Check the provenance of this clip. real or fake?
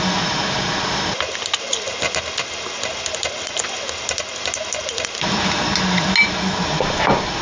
real